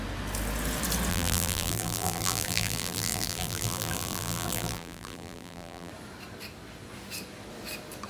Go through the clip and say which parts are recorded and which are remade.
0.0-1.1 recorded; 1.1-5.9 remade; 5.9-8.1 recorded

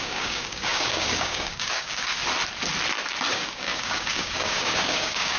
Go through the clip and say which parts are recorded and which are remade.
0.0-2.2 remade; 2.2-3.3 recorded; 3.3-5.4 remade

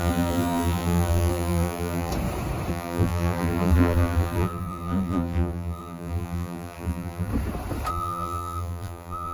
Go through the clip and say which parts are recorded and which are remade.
0.0-2.1 remade; 2.1-2.7 recorded; 2.7-7.3 remade; 7.3-7.9 recorded; 7.9-9.3 remade